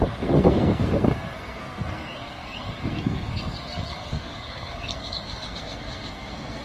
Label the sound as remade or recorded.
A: remade